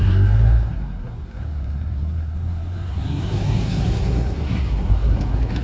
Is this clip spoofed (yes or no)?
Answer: yes